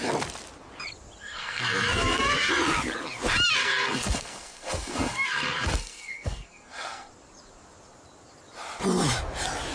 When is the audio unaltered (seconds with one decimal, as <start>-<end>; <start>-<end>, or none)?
0.0-1.2; 2.5-3.6; 7.1-9.7